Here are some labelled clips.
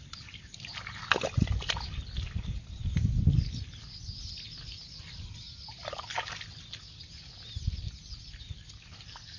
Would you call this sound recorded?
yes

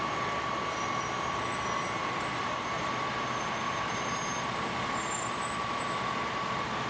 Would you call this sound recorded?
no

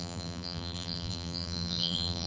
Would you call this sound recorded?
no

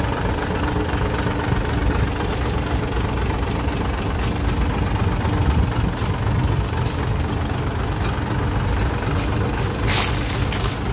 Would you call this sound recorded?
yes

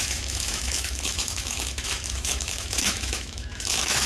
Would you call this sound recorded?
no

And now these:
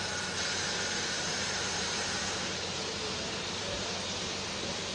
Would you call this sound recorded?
no